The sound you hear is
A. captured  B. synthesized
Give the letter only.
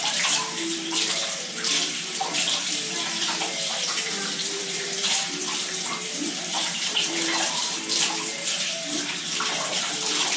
B